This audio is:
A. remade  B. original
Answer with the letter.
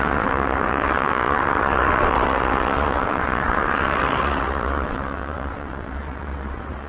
A